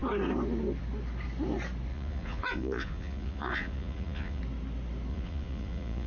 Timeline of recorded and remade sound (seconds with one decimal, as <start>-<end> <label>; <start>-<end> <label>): 0.0-1.9 recorded; 1.9-4.4 remade; 4.4-5.1 recorded; 5.1-6.1 remade